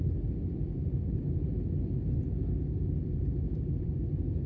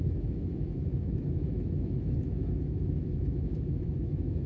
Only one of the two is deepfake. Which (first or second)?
second